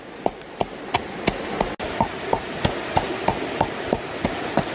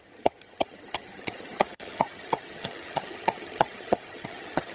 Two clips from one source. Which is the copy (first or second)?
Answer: second